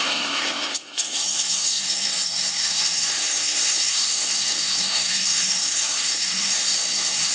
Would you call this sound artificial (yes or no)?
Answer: yes